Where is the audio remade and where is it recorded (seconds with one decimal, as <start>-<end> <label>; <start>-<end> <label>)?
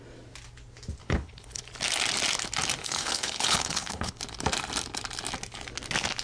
0.0-1.0 recorded; 1.0-1.6 remade; 1.6-2.8 recorded; 2.8-4.2 remade; 4.2-6.2 recorded